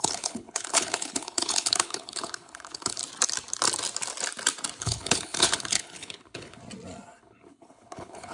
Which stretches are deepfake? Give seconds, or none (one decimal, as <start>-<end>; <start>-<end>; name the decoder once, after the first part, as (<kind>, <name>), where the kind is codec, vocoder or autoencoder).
0.0-3.0 (codec, HILCodec); 4.8-6.6; 7.2-8.3